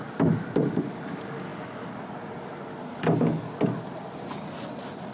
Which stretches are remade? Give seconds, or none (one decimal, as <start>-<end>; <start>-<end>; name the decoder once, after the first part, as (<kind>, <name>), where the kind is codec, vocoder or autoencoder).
none